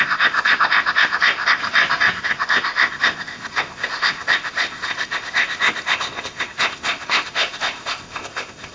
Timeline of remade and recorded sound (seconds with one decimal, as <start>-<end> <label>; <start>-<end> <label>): 0.0-1.6 remade; 1.6-2.2 recorded; 2.2-8.7 remade